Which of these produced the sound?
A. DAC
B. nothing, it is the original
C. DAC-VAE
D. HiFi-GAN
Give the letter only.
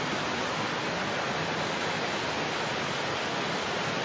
B